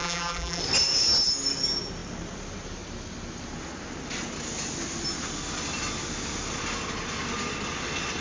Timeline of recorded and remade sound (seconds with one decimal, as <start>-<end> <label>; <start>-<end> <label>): 0.0-0.6 remade; 0.6-8.2 recorded

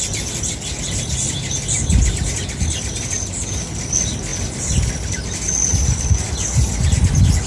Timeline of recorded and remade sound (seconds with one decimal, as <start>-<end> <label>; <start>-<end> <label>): 0.0-7.5 recorded

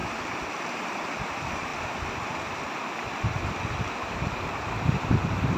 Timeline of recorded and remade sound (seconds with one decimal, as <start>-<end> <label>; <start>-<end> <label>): 0.0-0.5 recorded; 0.5-1.7 remade; 1.7-3.9 recorded; 3.9-5.6 remade

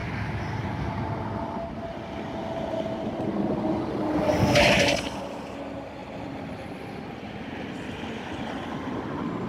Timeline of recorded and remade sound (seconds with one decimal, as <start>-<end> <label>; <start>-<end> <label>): 0.0-9.5 recorded

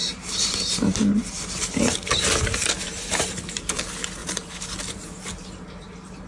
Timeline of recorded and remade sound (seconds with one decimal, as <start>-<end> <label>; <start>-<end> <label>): 0.0-3.8 remade; 3.8-4.2 recorded; 4.2-6.3 remade

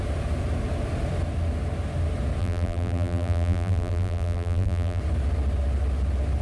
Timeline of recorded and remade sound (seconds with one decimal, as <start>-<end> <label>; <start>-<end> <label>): 0.0-2.4 recorded; 2.4-5.0 remade; 5.0-6.4 recorded

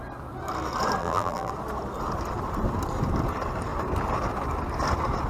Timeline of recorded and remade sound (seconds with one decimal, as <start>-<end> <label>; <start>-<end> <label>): 0.0-1.0 recorded; 1.0-1.5 remade; 1.5-5.3 recorded